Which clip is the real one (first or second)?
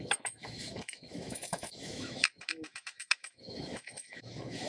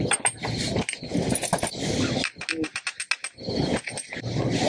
second